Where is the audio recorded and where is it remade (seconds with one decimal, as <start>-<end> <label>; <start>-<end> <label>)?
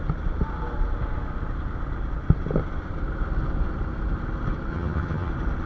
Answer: 0.0-4.7 recorded; 4.7-5.3 remade; 5.3-5.7 recorded